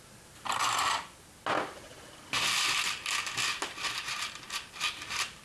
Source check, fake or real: real